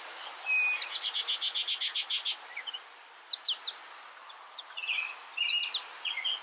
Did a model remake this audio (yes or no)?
no